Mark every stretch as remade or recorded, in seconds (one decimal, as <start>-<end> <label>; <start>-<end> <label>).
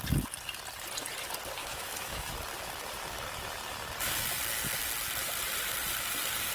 0.0-1.6 recorded; 1.6-2.3 remade; 2.3-6.5 recorded